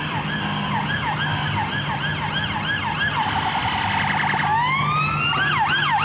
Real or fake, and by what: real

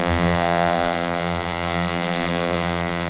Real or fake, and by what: fake, vocoder, BigVGAN v2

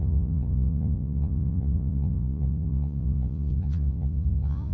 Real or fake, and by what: fake, vocoder, Vocos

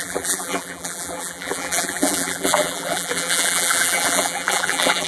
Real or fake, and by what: fake, vocoder, BigVGAN v2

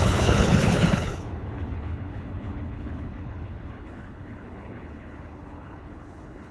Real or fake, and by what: fake, codec, HILCodec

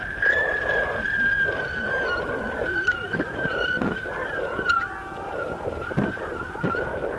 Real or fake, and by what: real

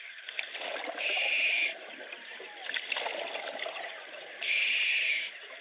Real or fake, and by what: real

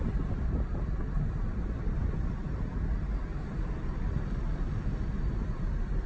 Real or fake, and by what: real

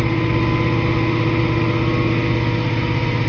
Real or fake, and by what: real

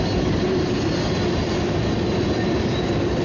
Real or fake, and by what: fake, vocoder, BigVGAN v2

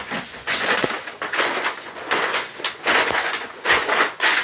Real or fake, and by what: fake, vocoder, Vocos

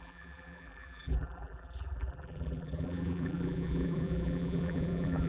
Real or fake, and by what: fake, vocoder, BigVGAN v2